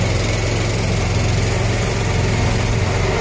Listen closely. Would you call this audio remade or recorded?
recorded